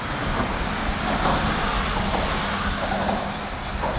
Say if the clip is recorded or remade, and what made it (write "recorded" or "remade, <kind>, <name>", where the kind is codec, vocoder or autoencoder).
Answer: recorded